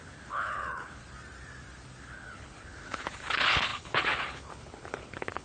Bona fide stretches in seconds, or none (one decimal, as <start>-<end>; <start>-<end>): 1.0-2.0